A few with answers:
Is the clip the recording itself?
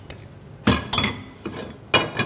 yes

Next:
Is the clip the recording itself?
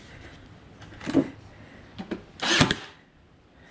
yes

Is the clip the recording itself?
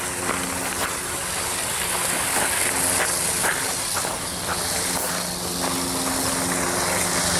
yes